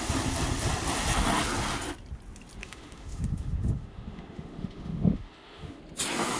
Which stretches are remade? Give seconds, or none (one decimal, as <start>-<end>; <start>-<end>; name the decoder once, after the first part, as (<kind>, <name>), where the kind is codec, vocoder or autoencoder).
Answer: 2.6-5.8 (autoencoder, DAC-VAE)